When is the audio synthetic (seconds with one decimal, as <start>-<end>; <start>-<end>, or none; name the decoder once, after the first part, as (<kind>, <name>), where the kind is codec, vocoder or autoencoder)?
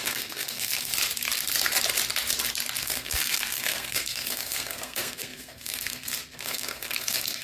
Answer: 0.0-0.9 (codec, SNAC); 2.8-7.4